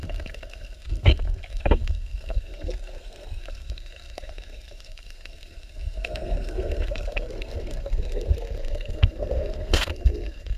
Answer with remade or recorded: remade